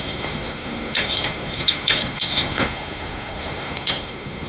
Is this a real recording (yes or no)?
no